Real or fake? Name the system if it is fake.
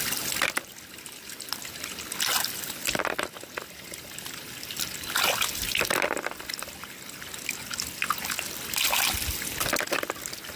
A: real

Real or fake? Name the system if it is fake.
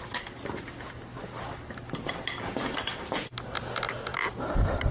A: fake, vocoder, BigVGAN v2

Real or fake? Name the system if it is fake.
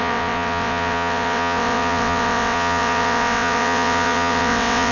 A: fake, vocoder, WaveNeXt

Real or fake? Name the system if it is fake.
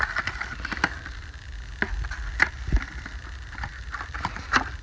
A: real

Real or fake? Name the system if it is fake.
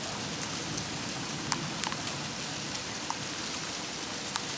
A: real